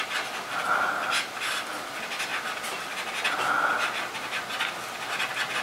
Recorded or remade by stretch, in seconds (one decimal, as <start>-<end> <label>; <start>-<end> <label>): 0.0-5.6 recorded

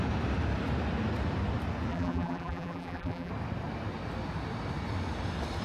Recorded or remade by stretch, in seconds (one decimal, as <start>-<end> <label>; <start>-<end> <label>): 0.0-1.9 recorded; 1.9-3.3 remade; 3.3-5.6 recorded

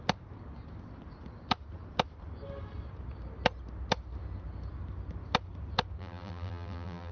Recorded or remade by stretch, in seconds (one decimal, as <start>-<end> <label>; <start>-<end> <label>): 0.0-6.0 recorded; 6.0-7.1 remade

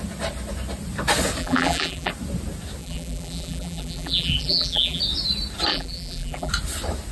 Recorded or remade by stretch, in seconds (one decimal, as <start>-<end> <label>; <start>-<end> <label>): 0.0-1.4 recorded; 1.4-2.1 remade; 2.1-2.8 recorded; 2.8-5.0 remade; 5.0-5.7 recorded; 5.7-6.5 remade; 6.5-7.1 recorded

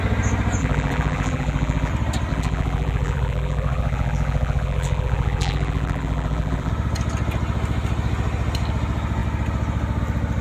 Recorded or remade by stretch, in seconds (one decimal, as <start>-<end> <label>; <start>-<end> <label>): 0.0-0.6 recorded; 0.6-1.9 remade; 1.9-2.3 recorded; 2.3-6.7 remade; 6.7-10.4 recorded

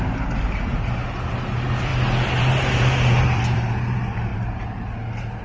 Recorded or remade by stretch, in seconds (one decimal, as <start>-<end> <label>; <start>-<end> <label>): 0.0-1.9 remade; 1.9-2.4 recorded; 2.4-5.4 remade